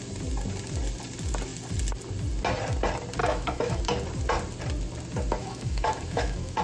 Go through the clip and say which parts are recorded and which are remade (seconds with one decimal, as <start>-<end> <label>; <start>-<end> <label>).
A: 0.0-3.2 recorded; 3.2-3.8 remade; 3.8-5.4 recorded; 5.4-6.6 remade